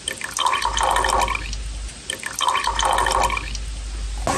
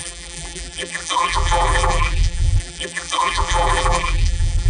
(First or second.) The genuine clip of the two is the first